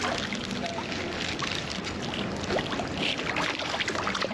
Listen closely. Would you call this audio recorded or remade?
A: recorded